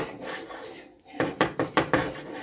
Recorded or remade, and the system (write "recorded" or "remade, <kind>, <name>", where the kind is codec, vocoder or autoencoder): recorded